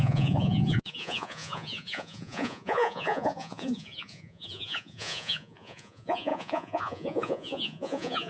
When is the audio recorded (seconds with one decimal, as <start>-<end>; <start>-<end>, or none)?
none